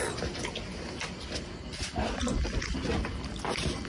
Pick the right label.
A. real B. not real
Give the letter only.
A